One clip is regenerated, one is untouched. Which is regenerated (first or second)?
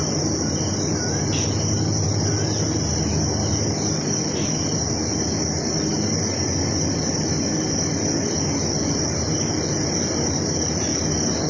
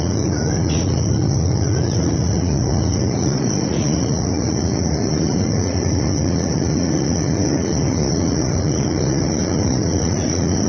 second